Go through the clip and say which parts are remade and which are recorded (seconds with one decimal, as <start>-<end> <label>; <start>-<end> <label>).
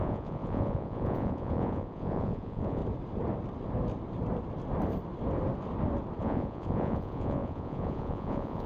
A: 0.0-2.8 remade; 2.8-6.2 recorded; 6.2-8.7 remade